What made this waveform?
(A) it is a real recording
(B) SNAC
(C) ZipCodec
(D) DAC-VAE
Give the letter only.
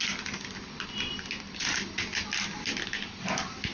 A